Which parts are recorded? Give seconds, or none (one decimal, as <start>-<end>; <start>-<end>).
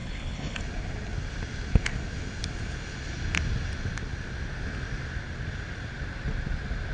0.6-6.9